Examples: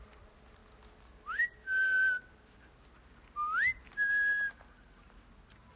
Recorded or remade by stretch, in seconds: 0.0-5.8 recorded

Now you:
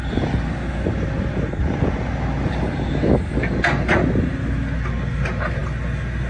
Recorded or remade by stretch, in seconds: 0.0-6.3 recorded

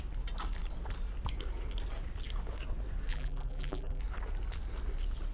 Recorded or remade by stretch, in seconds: 0.0-3.1 recorded; 3.1-4.0 remade; 4.0-5.3 recorded